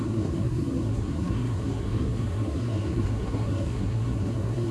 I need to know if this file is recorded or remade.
remade